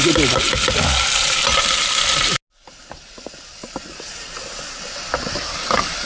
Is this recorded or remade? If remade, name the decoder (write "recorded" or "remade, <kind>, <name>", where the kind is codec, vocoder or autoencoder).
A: recorded